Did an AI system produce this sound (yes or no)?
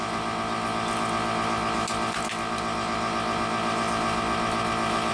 no